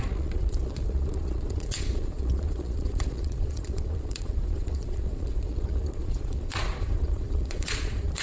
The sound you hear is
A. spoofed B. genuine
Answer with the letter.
A